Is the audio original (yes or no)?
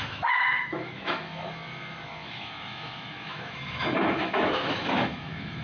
no